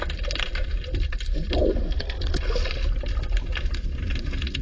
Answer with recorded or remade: recorded